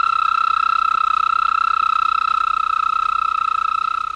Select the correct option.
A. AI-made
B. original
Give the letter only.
B